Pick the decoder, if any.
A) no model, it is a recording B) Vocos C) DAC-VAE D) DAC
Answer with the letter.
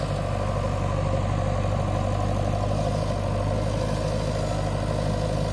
A